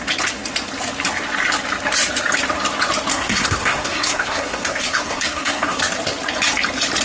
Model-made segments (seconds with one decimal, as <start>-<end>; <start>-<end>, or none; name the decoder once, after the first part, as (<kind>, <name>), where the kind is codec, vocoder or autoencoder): 3.1-5.8 (codec, SNAC)